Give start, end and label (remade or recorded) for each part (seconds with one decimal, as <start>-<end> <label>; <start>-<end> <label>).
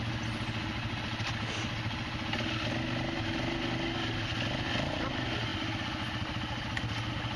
0.0-7.4 recorded